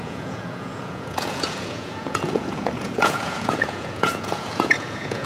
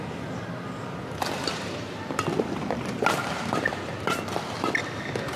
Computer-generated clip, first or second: first